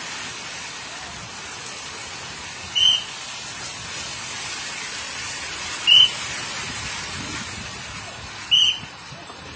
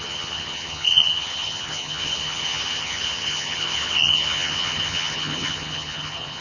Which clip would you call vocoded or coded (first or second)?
second